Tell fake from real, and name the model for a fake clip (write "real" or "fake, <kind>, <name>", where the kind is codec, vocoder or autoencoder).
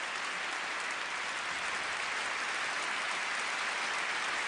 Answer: real